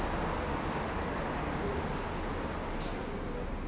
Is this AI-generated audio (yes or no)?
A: no